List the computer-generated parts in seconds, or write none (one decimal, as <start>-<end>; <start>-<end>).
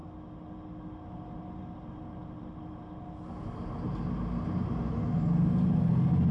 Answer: none